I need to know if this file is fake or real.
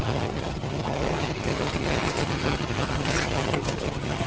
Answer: fake